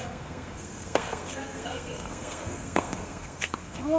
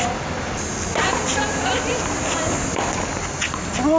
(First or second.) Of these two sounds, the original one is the second